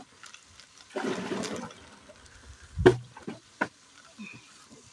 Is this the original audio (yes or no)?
yes